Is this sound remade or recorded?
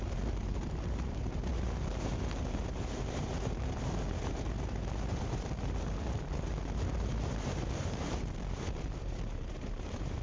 remade